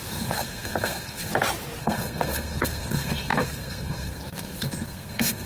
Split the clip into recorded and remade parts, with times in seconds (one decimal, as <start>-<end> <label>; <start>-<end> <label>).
0.0-1.3 remade; 1.3-1.8 recorded; 1.8-5.5 remade